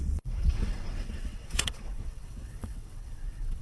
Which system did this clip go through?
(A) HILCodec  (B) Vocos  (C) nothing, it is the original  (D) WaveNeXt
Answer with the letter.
D